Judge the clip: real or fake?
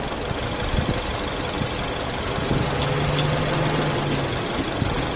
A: real